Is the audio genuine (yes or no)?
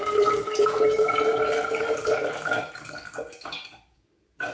no